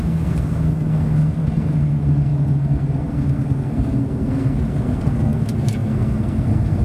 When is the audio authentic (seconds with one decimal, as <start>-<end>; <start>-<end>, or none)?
none